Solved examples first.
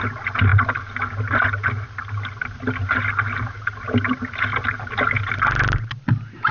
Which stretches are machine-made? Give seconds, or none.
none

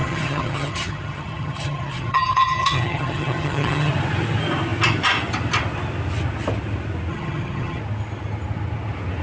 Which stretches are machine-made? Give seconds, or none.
0.0-3.9 (vocoder, HiFi-GAN); 7.1-7.8